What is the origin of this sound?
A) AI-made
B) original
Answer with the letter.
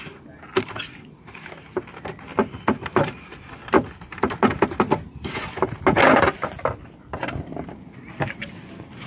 B